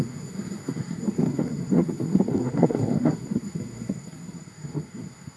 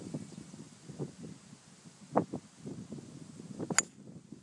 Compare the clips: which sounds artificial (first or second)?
first